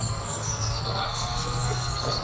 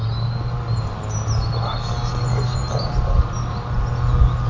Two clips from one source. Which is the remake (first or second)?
first